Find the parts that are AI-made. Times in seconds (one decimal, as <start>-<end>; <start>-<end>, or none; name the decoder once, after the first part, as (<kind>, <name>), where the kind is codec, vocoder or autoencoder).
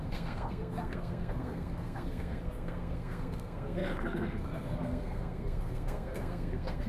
0.0-6.9 (codec, SNAC)